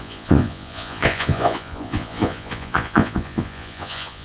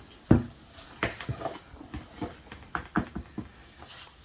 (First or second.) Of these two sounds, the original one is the second